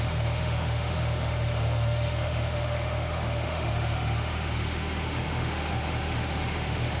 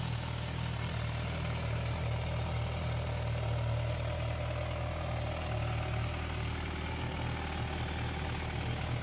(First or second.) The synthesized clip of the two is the first